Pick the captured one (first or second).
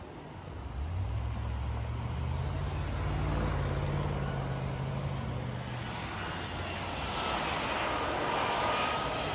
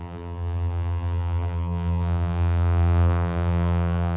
first